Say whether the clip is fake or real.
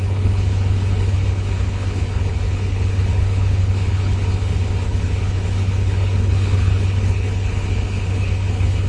fake